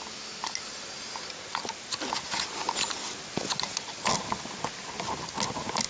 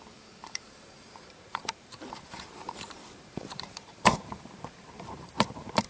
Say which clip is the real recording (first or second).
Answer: first